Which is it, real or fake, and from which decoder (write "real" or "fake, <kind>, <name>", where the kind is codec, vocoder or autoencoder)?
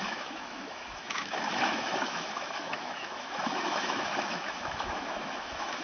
fake, autoencoder, DAC-VAE